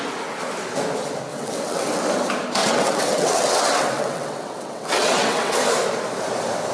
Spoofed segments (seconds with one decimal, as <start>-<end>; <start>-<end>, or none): 1.3-2.0; 2.6-5.6